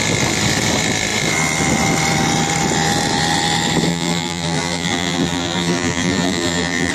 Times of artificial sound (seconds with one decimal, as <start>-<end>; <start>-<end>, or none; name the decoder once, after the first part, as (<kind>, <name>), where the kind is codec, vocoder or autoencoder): 3.9-6.9 (vocoder, BigVGAN v2)